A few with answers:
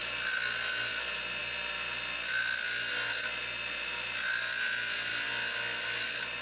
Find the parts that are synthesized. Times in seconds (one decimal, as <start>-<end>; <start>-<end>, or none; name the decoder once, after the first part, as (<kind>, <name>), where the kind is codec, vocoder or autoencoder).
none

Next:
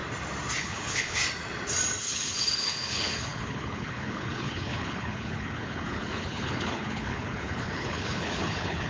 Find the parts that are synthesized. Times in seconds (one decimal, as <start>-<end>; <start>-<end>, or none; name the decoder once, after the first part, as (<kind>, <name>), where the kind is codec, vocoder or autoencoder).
0.6-1.2 (codec, HILCodec); 2.0-8.9

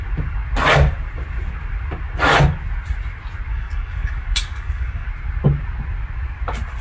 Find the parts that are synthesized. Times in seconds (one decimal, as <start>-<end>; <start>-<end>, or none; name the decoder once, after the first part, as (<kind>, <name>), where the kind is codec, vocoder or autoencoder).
3.5-5.1 (codec, DAC)